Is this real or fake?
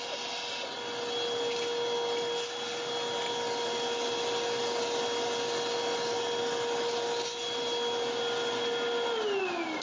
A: real